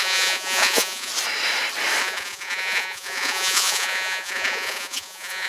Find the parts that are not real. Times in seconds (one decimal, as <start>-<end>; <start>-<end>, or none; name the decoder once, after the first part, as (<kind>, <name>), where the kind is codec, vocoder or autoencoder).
0.0-1.1 (vocoder, Vocos); 2.0-5.5